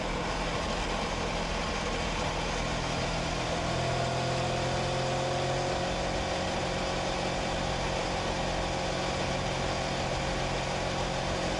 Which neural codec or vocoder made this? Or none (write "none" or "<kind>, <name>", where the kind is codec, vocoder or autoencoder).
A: none